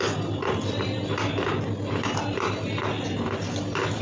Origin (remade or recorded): recorded